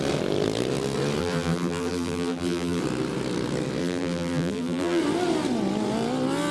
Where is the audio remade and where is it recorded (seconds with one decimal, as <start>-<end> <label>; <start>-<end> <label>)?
0.0-1.2 recorded; 1.2-2.8 remade; 2.8-3.8 recorded; 3.8-5.0 remade; 5.0-6.5 recorded